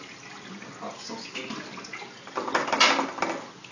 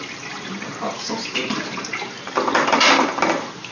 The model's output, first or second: second